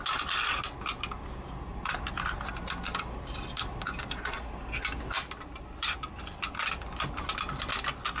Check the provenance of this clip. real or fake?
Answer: real